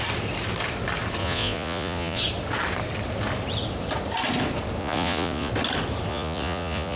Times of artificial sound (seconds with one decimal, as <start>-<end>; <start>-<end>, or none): 1.2-2.2; 4.8-5.5; 6.1-7.0